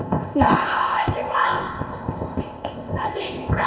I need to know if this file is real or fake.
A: fake